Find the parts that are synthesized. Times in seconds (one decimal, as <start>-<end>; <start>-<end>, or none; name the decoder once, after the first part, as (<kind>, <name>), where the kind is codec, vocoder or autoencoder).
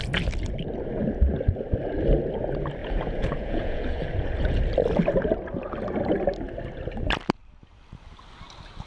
2.8-4.6 (vocoder, Vocos)